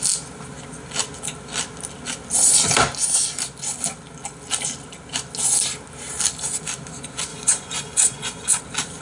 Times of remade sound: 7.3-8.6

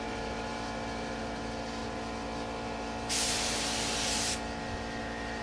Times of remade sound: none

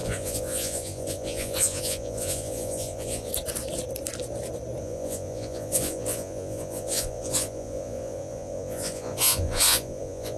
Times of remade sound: 0.0-3.3; 4.8-10.4

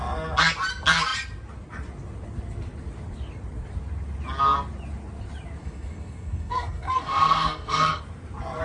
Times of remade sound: 5.6-8.0